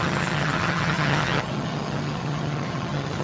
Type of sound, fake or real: fake